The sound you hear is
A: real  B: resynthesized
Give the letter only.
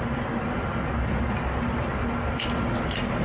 A